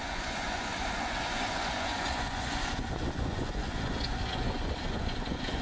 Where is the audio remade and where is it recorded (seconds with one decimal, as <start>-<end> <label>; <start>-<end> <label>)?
0.0-5.6 remade